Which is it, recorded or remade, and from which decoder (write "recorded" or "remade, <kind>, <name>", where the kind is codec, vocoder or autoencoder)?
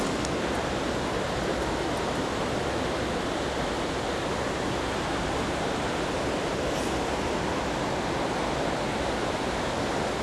recorded